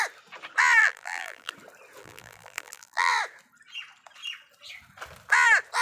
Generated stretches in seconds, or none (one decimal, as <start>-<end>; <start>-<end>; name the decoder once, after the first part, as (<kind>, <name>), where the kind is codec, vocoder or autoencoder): 0.8-1.5 (vocoder, BigVGAN v2); 2.0-3.1